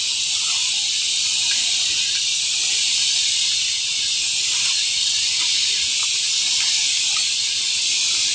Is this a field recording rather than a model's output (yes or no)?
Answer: yes